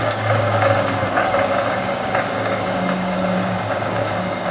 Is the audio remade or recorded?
remade